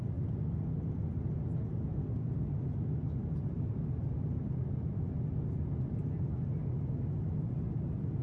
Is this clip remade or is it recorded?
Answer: recorded